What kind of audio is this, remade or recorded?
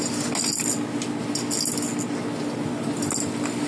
recorded